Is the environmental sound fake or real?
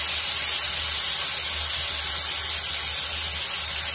real